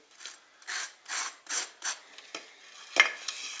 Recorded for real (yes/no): yes